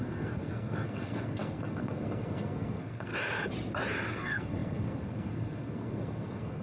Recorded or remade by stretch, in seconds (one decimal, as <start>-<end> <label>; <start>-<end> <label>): 0.0-3.1 remade; 3.1-4.1 recorded; 4.1-6.6 remade